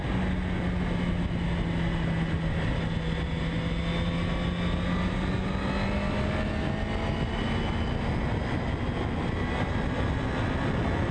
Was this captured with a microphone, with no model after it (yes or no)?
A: yes